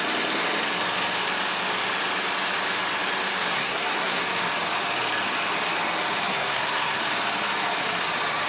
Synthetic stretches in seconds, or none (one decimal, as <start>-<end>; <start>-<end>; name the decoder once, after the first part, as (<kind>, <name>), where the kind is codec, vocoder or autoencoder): 3.5-4.2 (codec, SNAC); 6.3-7.0